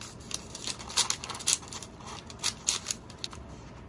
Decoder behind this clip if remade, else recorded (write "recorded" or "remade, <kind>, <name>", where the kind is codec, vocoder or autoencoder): recorded